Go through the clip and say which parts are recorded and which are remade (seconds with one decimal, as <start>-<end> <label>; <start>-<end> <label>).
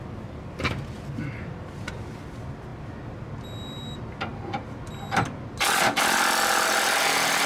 0.0-7.5 recorded